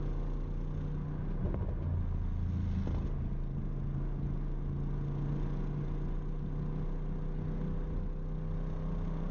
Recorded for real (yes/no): yes